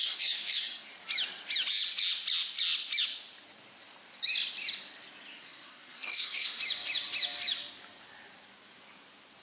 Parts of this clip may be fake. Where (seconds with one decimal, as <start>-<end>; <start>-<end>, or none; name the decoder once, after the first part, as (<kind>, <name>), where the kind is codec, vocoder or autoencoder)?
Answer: 0.0-0.9 (codec, SNAC); 5.3-6.6